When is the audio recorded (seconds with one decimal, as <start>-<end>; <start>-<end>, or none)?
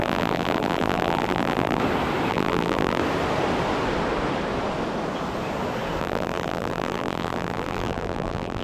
1.8-2.3; 3.0-6.0